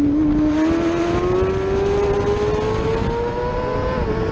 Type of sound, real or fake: real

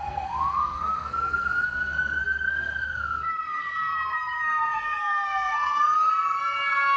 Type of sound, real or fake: fake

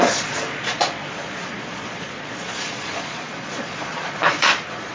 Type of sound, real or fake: fake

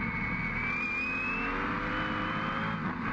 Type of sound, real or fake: real